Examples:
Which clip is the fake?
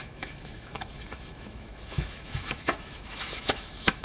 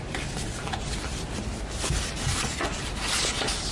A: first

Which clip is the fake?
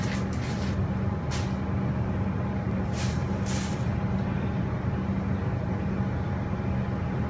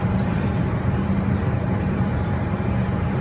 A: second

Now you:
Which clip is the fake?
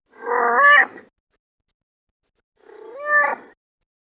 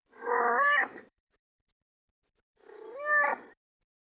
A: second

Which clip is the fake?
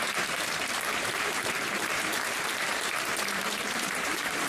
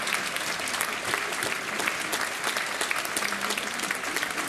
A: first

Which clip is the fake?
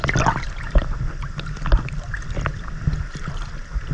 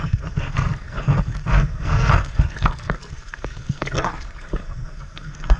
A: second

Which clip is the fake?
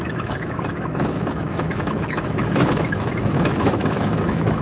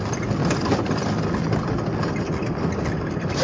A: first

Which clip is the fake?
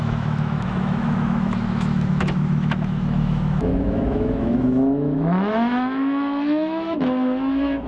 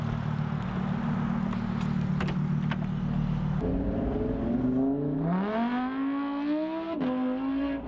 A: first